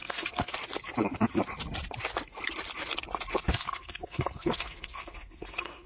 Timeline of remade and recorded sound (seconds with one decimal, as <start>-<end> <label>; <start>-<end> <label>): 0.0-0.5 remade; 0.5-3.5 recorded; 3.5-5.9 remade